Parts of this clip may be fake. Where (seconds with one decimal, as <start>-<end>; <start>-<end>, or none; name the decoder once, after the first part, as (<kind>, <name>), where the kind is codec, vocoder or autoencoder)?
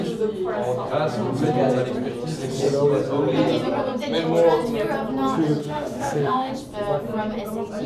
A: 5.6-6.5 (autoencoder, DAC-VAE)